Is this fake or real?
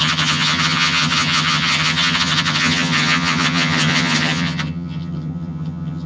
fake